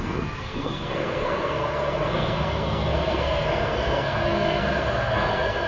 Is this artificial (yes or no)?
yes